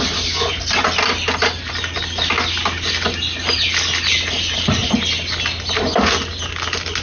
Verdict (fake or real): real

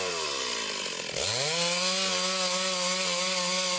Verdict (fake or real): real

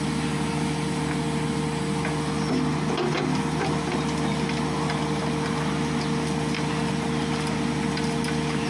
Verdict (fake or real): real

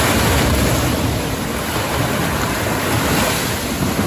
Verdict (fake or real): real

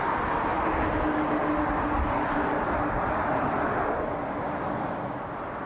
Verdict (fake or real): real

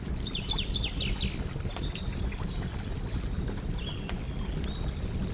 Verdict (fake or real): real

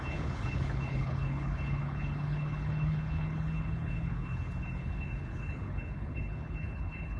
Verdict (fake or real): fake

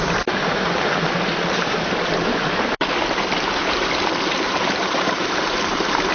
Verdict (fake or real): fake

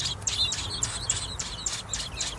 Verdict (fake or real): real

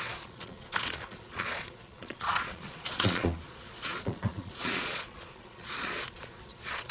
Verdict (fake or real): fake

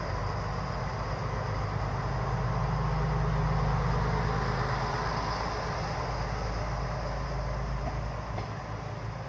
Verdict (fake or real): real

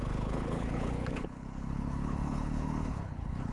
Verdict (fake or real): fake